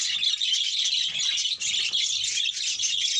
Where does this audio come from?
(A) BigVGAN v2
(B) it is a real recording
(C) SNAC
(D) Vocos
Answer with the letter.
B